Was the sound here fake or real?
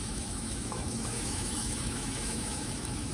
fake